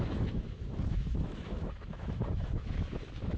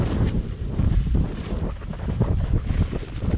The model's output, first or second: first